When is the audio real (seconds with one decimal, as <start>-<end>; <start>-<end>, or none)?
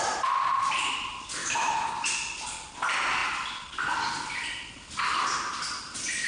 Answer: 0.0-1.4; 1.9-6.3